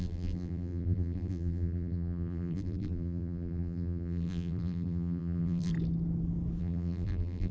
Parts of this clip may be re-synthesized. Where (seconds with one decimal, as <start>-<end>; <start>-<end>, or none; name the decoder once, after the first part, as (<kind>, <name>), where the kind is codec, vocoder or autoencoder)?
0.0-5.7 (vocoder, BigVGAN v2); 6.6-7.5